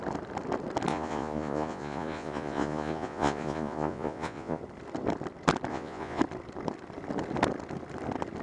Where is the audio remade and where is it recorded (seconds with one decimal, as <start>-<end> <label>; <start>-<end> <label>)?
0.0-0.9 recorded; 0.9-4.6 remade; 4.6-5.7 recorded; 5.7-6.2 remade; 6.2-8.4 recorded